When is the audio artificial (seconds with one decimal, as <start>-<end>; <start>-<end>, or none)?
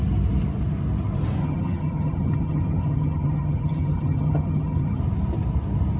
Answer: 1.4-5.0